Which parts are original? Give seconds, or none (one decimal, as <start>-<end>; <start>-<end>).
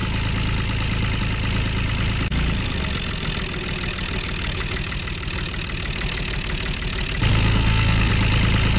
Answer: 0.0-7.3; 8.1-8.8